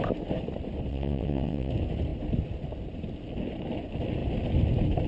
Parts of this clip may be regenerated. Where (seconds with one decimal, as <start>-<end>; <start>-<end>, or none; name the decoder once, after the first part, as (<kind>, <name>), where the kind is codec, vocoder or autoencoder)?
0.9-1.7 (vocoder, WaveNeXt)